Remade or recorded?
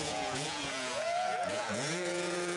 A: remade